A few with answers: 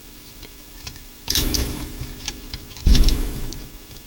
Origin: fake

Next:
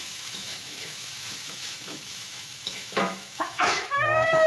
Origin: fake